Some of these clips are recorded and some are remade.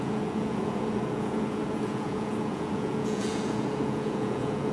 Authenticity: remade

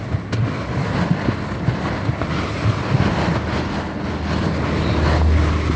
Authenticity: recorded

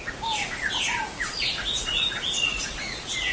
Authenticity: remade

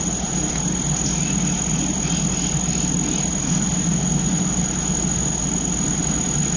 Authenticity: recorded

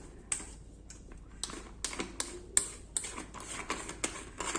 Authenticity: recorded